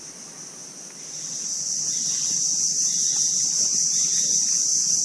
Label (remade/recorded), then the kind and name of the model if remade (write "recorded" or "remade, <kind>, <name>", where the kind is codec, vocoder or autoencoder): recorded